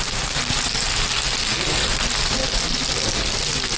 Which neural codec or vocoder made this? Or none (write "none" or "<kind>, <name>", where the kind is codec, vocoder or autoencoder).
none